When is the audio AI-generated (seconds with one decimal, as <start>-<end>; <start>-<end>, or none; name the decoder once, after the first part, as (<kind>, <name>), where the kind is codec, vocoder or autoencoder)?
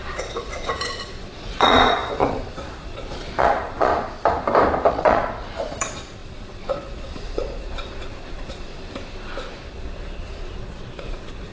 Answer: 0.0-3.9 (vocoder, Vocos); 4.9-8.7; 10.0-11.5